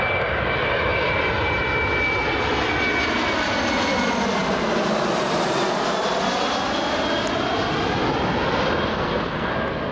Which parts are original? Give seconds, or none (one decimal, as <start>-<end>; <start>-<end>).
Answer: 0.0-8.9; 9.5-9.9